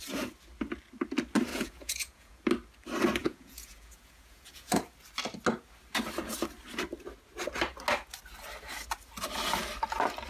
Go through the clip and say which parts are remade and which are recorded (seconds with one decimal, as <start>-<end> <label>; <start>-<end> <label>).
0.0-1.5 recorded; 1.5-2.4 remade; 2.4-3.2 recorded; 3.2-4.8 remade; 4.8-10.3 recorded